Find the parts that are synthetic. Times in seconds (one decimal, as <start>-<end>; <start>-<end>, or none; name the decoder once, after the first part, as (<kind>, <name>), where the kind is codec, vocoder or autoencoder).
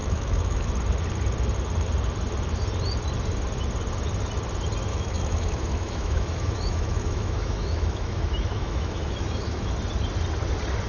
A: 0.0-0.7 (autoencoder, DAC-VAE); 4.9-9.7